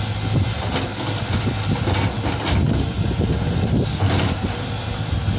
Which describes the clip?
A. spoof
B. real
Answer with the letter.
B